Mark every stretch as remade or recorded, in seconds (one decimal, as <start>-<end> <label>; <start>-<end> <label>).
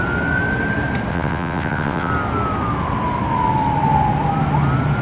0.0-1.1 recorded; 1.1-2.1 remade; 2.1-5.0 recorded